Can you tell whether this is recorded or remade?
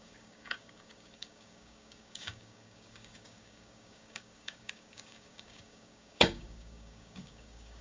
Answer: remade